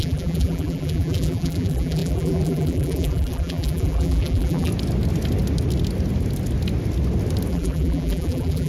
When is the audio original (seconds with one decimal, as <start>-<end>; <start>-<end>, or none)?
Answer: 4.7-7.5